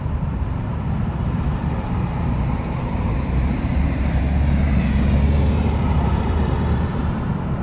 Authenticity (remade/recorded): remade